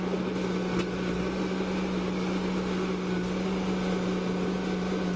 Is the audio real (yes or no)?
yes